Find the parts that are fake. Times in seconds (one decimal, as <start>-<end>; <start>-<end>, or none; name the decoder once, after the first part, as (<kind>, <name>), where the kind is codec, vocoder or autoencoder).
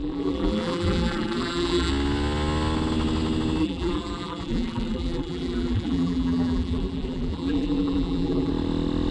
0.0-1.9 (vocoder, BigVGAN v2); 3.6-8.5